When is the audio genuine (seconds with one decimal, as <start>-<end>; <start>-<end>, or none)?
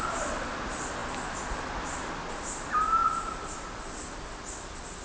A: 0.0-3.0; 4.5-5.0